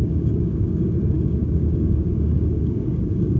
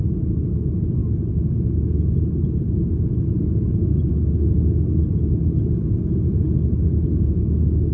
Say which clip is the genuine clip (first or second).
second